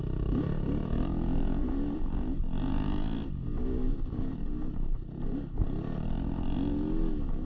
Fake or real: real